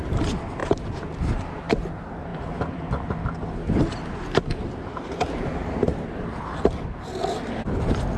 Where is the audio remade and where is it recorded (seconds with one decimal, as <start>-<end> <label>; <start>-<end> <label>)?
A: 0.0-0.6 recorded; 0.6-1.7 remade; 1.7-8.2 recorded